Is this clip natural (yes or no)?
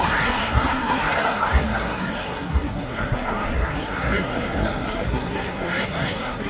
no